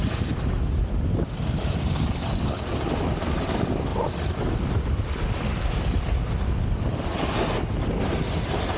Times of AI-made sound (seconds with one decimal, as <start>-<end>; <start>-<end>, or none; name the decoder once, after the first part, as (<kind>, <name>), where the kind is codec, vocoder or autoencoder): none

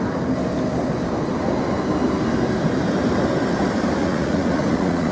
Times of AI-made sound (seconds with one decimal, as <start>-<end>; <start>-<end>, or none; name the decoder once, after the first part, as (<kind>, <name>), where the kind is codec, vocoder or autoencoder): 4.0-5.1 (vocoder, Vocos)

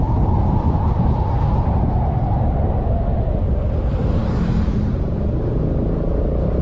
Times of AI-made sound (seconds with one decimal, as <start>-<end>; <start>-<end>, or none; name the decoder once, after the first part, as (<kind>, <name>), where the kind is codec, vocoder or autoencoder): none

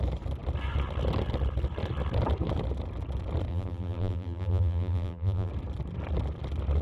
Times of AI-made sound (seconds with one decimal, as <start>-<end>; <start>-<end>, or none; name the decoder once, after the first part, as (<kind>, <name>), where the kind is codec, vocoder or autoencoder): 3.5-5.5 (vocoder, BigVGAN v2)